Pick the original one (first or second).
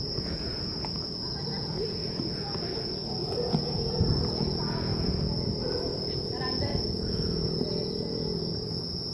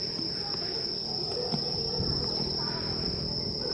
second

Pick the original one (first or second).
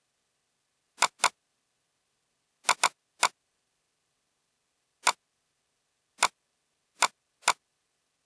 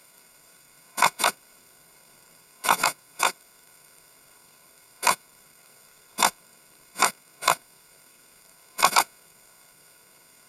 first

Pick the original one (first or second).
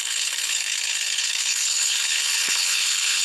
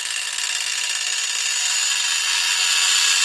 second